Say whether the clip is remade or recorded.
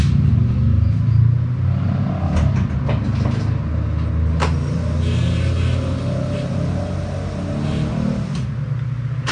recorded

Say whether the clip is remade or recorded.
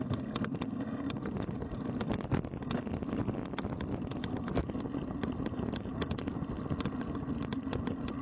recorded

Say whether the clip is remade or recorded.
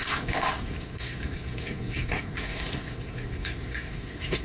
remade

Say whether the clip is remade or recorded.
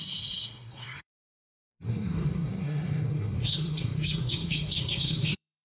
remade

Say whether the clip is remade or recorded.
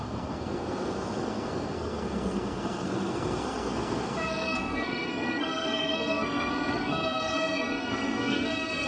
remade